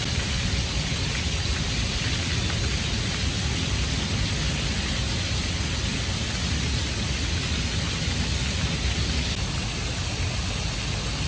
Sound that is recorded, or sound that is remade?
recorded